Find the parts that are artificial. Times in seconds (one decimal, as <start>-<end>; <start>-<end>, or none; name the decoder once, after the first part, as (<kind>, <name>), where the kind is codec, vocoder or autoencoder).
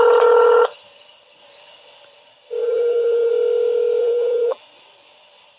2.6-3.3 (vocoder, BigVGAN v2); 4.0-4.6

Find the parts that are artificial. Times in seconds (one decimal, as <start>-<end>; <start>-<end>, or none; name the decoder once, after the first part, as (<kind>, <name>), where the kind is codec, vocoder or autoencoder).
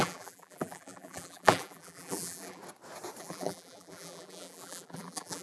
0.0-2.6 (vocoder, BigVGAN v2); 3.2-5.4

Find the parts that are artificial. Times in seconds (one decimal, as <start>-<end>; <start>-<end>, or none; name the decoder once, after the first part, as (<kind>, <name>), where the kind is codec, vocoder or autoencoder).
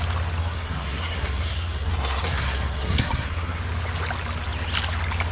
0.4-3.6 (codec, SNAC)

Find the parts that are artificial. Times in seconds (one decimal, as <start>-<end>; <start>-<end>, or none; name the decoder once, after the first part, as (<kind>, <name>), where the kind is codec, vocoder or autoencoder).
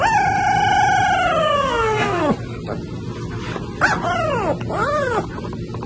1.4-2.3 (codec, SNAC)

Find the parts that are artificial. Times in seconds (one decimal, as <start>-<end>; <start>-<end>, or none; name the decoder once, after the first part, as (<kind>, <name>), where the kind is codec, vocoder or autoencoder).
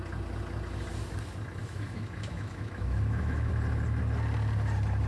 1.6-3.5 (autoencoder, DAC-VAE)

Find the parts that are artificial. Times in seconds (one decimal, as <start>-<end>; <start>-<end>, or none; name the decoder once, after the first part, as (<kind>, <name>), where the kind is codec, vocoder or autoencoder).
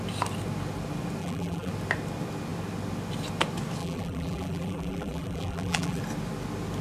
1.2-1.7 (vocoder, BigVGAN v2); 3.8-6.0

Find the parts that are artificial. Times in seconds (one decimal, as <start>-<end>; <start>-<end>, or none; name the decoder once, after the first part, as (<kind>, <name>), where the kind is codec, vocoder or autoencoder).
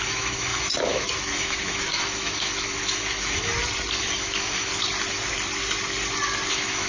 0.0-3.5 (autoencoder, DAC-VAE); 4.0-4.7; 6.5-6.9